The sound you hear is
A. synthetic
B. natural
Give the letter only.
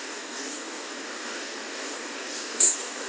A